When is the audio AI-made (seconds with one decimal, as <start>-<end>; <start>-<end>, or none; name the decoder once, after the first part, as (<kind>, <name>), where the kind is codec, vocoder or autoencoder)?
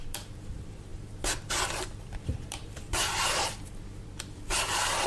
0.0-5.1 (vocoder, BigVGAN v2)